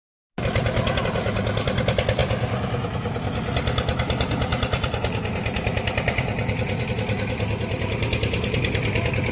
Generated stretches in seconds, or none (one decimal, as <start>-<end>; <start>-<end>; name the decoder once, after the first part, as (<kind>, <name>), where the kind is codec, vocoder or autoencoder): none